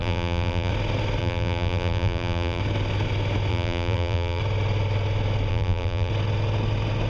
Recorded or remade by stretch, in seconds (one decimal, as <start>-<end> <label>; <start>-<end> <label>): 0.0-0.7 remade; 0.7-1.2 recorded; 1.2-2.6 remade; 2.6-3.5 recorded; 3.5-4.4 remade; 4.4-5.5 recorded; 5.5-6.1 remade; 6.1-7.1 recorded